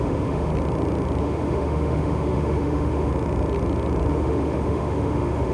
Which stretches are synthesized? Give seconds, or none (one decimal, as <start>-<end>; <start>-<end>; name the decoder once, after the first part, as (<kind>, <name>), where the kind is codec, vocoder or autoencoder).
0.0-0.5 (autoencoder, DAC-VAE); 1.2-3.1; 4.1-5.5